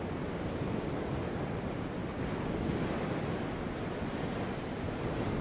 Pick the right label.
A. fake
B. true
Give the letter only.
B